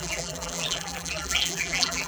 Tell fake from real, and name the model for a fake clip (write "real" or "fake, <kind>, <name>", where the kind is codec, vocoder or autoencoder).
fake, vocoder, BigVGAN v2